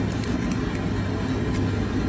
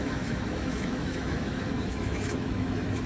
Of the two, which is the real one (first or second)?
first